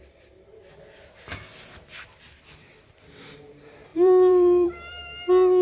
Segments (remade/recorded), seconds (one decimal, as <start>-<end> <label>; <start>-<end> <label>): 0.0-3.9 recorded; 3.9-5.0 remade; 5.0-5.6 recorded